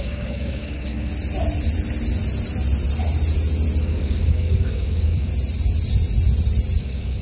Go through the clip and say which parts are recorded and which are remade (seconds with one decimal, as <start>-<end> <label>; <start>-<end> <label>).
0.0-1.1 remade; 1.1-3.8 recorded; 3.8-5.3 remade; 5.3-6.8 recorded; 6.8-7.2 remade